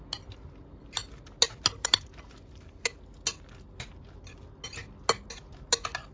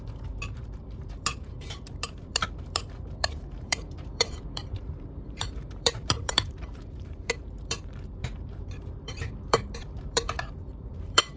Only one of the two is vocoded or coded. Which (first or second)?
second